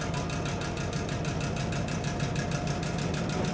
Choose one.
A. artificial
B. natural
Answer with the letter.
B